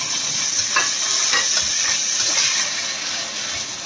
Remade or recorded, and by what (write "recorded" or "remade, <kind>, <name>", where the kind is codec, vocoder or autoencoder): recorded